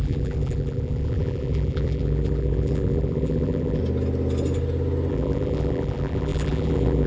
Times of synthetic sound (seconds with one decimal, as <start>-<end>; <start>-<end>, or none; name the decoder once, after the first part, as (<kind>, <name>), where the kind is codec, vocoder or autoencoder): 0.0-3.8 (vocoder, BigVGAN v2); 5.1-7.1